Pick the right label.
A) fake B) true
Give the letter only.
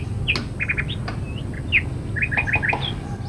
B